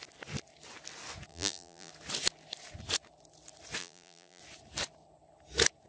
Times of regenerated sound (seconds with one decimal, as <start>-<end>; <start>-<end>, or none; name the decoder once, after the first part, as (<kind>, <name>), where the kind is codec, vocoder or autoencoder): 1.3-1.9 (vocoder, BigVGAN v2); 3.8-4.4